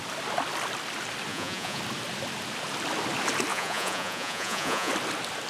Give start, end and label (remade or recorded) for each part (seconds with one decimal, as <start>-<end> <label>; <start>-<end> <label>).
0.0-1.3 recorded; 1.3-1.8 remade; 1.8-3.5 recorded; 3.5-4.9 remade; 4.9-5.5 recorded